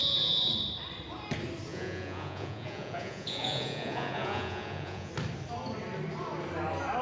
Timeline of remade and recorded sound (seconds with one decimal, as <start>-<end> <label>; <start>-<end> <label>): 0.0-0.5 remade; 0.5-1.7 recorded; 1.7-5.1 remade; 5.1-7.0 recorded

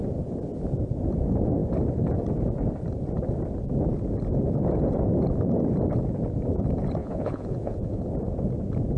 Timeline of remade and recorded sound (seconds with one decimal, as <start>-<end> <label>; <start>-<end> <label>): 0.0-7.0 recorded; 7.0-8.0 remade; 8.0-9.0 recorded

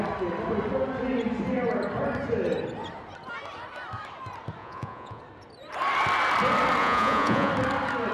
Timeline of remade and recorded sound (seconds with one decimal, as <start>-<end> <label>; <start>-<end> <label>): 0.0-4.6 recorded; 4.6-5.2 remade; 5.2-6.8 recorded; 6.8-7.5 remade; 7.5-8.1 recorded

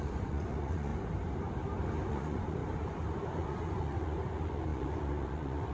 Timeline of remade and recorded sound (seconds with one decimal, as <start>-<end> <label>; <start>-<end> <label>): 0.0-0.9 remade; 0.9-2.1 recorded; 2.1-2.6 remade; 2.6-3.2 recorded; 3.2-5.7 remade

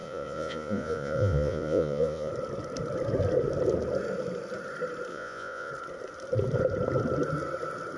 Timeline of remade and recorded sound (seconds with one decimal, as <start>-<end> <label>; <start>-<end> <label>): 0.0-2.3 remade; 2.3-5.1 recorded; 5.1-5.7 remade; 5.7-8.0 recorded

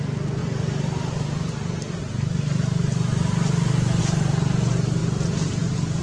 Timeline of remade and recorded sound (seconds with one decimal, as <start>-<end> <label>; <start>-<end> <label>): 0.0-6.0 recorded